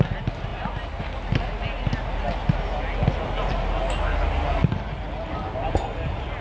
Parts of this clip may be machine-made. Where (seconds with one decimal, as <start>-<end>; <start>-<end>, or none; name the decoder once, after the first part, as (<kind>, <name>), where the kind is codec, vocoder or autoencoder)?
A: none